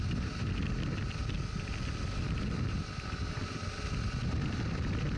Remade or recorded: recorded